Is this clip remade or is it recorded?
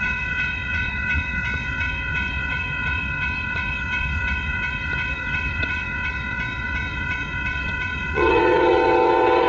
remade